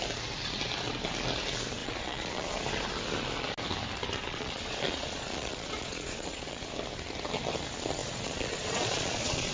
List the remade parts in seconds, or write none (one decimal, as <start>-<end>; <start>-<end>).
1.8-2.5; 4.3-6.7; 8.0-9.5